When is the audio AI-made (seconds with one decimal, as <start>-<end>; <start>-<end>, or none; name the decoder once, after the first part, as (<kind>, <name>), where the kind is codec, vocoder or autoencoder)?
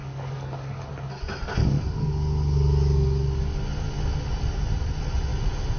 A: 0.0-0.9 (codec, DAC); 1.6-3.6